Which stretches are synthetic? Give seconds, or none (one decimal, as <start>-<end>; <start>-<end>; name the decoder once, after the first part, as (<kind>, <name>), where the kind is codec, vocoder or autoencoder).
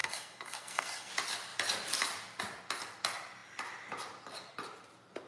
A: 0.0-1.1 (codec, SNAC)